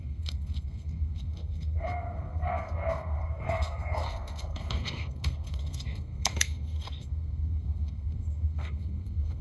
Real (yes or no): no